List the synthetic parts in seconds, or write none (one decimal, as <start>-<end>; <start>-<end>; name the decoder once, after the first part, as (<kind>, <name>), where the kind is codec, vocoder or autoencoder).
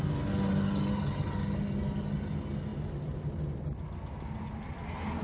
none